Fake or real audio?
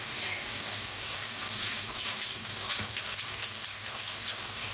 fake